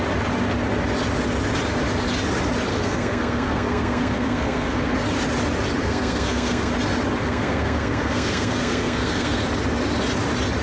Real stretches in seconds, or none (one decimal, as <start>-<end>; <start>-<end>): 0.0-2.7; 4.9-5.8; 6.7-7.2; 9.4-10.6